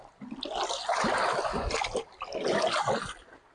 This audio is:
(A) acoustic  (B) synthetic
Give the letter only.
A